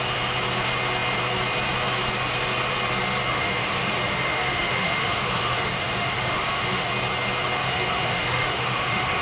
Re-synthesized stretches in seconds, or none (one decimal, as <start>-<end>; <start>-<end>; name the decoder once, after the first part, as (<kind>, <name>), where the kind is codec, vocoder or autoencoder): 3.3-6.9 (autoencoder, DAC-VAE); 7.6-9.2